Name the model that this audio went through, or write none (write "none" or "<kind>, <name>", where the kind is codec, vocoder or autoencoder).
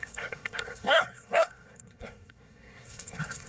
codec, SNAC